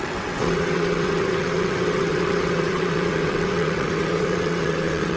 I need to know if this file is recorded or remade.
remade